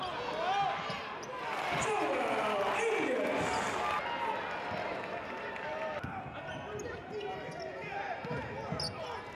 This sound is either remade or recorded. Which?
recorded